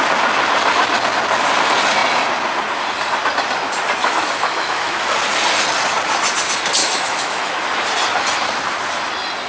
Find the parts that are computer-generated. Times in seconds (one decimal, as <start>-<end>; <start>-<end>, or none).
4.0-5.0; 6.8-7.6